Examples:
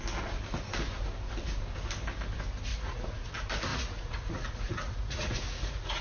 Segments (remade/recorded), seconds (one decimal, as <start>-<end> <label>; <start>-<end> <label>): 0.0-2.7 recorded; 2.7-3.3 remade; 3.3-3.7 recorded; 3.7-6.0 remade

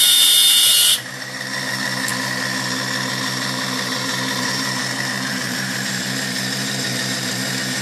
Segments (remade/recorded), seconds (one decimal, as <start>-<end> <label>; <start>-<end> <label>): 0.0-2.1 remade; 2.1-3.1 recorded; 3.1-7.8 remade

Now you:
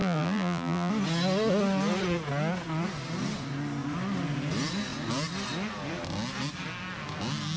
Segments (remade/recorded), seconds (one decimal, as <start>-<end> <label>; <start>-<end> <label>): 0.0-0.9 remade; 0.9-7.6 recorded

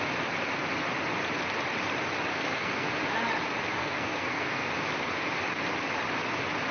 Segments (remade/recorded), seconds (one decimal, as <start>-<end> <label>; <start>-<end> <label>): 0.0-2.3 recorded; 2.3-2.9 remade; 2.9-3.8 recorded; 3.8-4.7 remade; 4.7-6.7 recorded

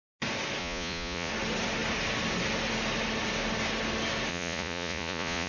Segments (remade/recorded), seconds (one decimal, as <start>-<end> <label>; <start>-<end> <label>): 0.0-0.6 recorded; 0.6-1.3 remade; 1.3-4.3 recorded; 4.3-5.5 remade

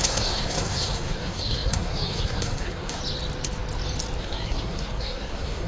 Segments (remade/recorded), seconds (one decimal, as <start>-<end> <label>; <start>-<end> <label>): 0.0-3.0 remade; 3.0-4.2 recorded; 4.2-5.7 remade